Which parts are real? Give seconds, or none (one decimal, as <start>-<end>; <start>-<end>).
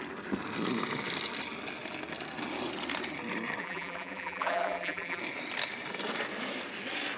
0.0-3.6; 5.2-7.2